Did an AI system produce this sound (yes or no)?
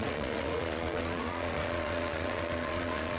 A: yes